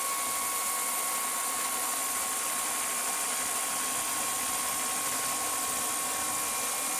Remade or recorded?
recorded